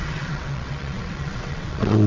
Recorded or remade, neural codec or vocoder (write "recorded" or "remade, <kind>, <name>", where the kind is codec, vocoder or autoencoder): remade, vocoder, WaveNeXt